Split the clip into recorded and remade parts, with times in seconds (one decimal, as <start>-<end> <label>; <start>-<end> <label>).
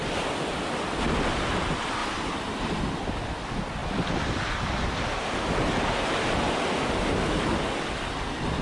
0.0-2.0 recorded; 2.0-2.8 remade; 2.8-8.6 recorded